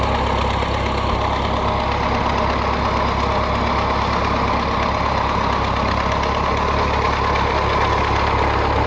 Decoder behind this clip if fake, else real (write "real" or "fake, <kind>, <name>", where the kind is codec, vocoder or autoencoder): real